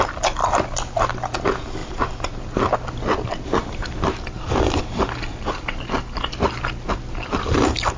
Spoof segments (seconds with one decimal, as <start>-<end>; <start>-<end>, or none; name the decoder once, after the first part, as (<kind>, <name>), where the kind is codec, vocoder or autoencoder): none

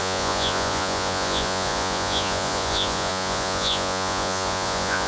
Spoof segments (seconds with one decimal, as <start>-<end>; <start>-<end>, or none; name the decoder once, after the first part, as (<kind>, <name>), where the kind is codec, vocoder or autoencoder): 0.0-5.1 (vocoder, Vocos)

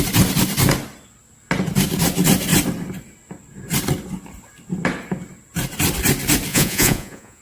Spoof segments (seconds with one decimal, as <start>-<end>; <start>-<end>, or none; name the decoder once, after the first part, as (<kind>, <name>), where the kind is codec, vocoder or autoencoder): 6.5-7.4 (vocoder, Vocos)

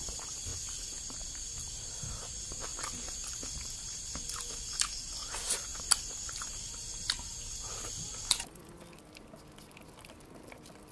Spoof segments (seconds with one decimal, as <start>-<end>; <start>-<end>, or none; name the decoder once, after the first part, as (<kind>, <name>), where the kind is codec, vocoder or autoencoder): none

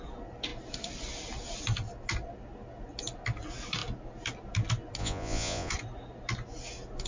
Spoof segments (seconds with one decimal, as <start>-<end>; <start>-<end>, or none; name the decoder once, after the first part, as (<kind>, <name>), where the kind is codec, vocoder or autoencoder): 5.0-5.7 (vocoder, Vocos)